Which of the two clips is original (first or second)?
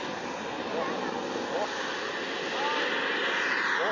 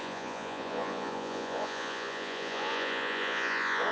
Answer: first